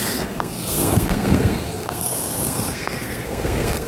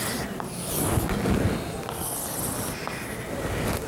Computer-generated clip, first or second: first